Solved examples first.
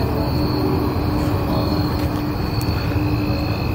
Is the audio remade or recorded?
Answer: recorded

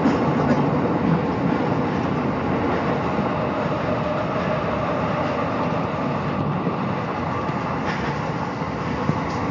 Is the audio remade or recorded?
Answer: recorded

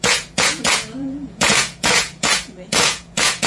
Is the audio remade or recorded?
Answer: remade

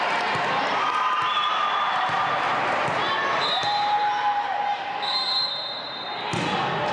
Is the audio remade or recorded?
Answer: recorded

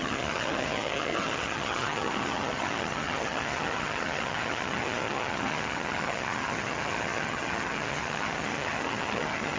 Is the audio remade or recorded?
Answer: remade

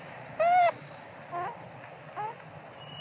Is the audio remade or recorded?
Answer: recorded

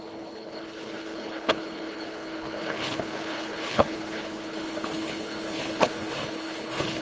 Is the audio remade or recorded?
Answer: remade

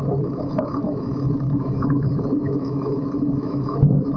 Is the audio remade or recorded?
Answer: remade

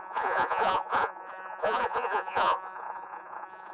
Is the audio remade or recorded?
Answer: remade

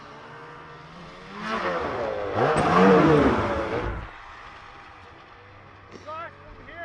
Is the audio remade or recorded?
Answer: recorded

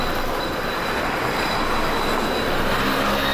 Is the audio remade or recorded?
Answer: recorded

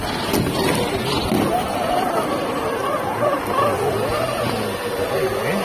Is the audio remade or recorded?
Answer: recorded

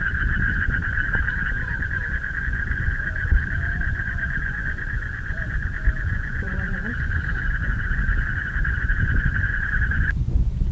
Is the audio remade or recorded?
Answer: remade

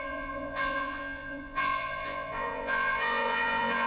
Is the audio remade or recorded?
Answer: remade